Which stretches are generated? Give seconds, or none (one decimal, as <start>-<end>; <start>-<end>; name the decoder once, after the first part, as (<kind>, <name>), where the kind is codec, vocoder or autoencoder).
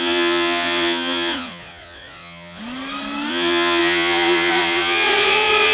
0.0-2.6 (vocoder, Vocos); 3.3-5.7